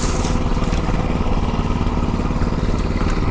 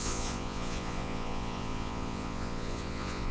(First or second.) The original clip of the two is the first